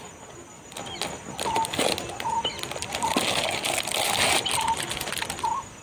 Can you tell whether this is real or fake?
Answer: real